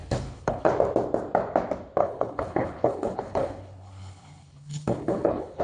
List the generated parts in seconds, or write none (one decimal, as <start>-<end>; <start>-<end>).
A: 0.0-0.7; 2.0-5.6